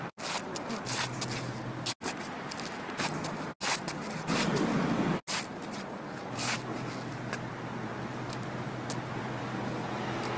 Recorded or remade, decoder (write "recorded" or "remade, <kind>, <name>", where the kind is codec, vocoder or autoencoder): recorded